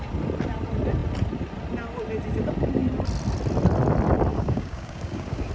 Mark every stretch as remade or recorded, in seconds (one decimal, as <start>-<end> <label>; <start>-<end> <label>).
0.0-4.3 recorded; 4.3-5.5 remade